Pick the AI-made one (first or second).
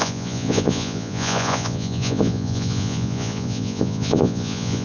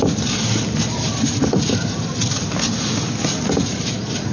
first